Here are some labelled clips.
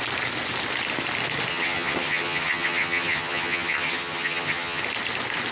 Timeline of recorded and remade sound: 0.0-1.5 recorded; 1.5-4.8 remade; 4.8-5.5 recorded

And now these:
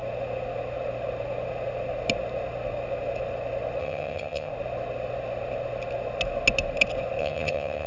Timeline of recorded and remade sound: 0.0-3.8 recorded; 3.8-4.5 remade; 4.5-7.2 recorded; 7.2-7.9 remade

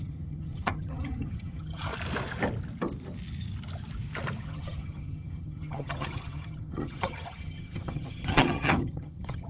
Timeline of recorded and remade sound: 0.0-1.9 remade; 1.9-4.4 recorded; 4.4-9.5 remade

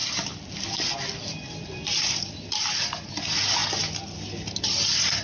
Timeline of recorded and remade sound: 0.0-5.2 recorded

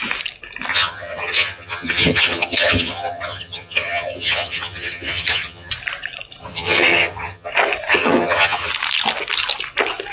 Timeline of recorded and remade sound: 0.0-0.7 recorded; 0.7-5.7 remade; 5.7-6.4 recorded; 6.4-7.5 remade; 7.5-7.9 recorded; 7.9-8.7 remade; 8.7-10.1 recorded

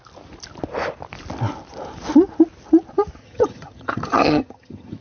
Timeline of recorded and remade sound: 0.0-3.2 recorded; 3.2-5.0 remade

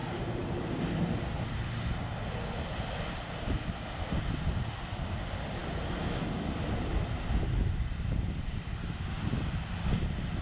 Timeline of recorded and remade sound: 0.0-10.4 recorded